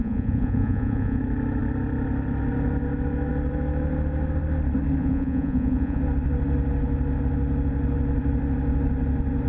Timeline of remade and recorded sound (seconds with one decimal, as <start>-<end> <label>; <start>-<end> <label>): 0.0-1.2 remade; 1.2-5.0 recorded; 5.0-6.0 remade; 6.0-9.5 recorded